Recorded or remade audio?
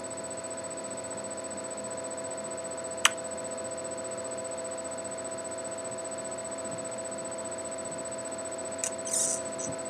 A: recorded